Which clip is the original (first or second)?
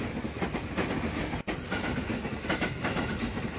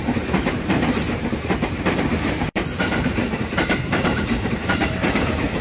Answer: first